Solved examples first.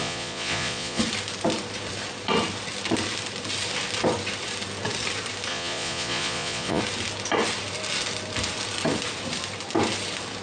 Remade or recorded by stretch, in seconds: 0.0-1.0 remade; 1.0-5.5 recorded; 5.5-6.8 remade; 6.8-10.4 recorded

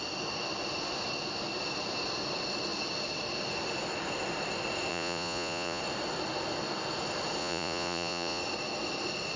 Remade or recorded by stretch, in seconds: 0.0-4.9 recorded; 4.9-5.8 remade; 5.8-7.4 recorded; 7.4-8.4 remade; 8.4-9.4 recorded

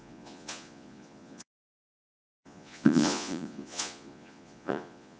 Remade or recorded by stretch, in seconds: 0.0-5.2 remade

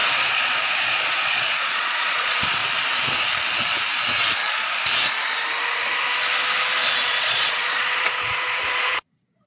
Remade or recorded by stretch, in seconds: 0.0-2.6 remade; 2.6-7.2 recorded; 7.2-9.5 remade